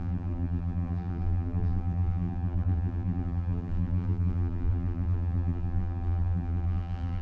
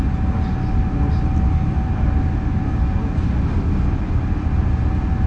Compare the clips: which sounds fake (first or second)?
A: first